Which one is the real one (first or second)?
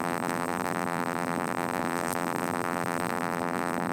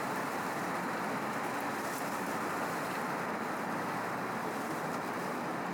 second